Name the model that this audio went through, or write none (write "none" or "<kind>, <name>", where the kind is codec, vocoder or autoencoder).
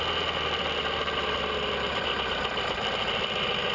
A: none